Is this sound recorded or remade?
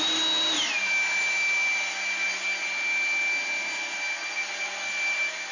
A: recorded